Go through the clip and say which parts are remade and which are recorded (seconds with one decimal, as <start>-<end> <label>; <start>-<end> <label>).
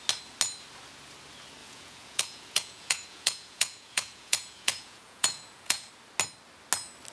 0.0-1.6 recorded; 1.6-5.9 remade; 5.9-7.1 recorded